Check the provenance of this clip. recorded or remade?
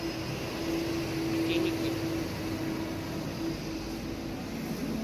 recorded